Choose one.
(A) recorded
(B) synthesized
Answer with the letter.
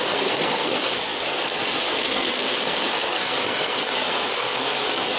B